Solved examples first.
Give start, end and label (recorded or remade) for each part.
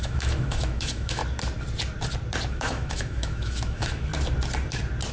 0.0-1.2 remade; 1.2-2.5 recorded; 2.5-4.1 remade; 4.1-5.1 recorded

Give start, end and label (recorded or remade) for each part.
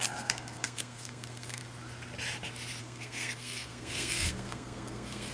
0.0-1.6 remade; 1.6-2.8 recorded; 2.8-5.3 remade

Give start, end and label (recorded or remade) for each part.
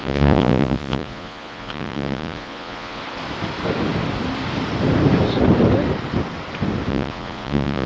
0.0-3.0 remade; 3.0-6.9 recorded; 6.9-7.9 remade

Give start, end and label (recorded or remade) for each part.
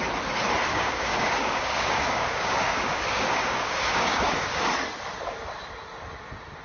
0.0-0.7 recorded; 0.7-4.7 remade; 4.7-6.6 recorded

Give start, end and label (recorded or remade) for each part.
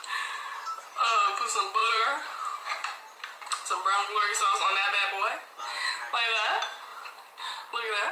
0.0-1.8 recorded; 1.8-5.4 remade; 5.4-8.1 recorded